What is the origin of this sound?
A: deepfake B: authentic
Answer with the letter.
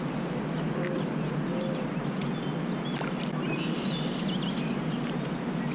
B